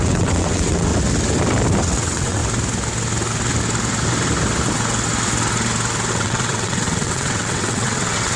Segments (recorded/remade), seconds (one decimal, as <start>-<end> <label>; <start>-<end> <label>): 0.0-0.9 remade; 0.9-1.8 recorded; 1.8-2.4 remade; 2.4-6.1 recorded; 6.1-8.4 remade